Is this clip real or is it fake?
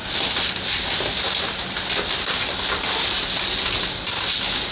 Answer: real